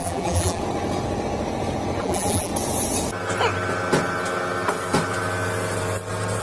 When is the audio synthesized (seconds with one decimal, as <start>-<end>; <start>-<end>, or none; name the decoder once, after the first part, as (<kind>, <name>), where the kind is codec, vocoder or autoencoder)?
0.0-0.6 (vocoder, BigVGAN v2); 2.0-2.5